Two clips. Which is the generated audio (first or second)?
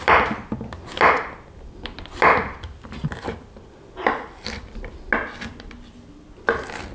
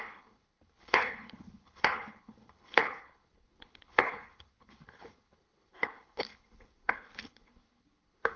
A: second